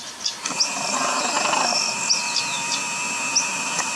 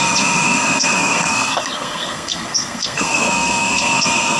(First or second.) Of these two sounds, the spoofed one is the second